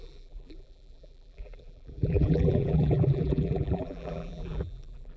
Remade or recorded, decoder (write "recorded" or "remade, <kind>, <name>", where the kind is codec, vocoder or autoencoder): remade, vocoder, BigVGAN v2